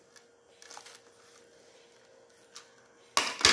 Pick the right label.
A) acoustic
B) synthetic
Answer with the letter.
A